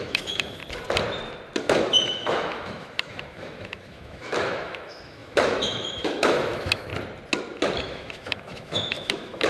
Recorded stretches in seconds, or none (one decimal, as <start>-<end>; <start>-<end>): 0.6-1.6; 6.9-7.8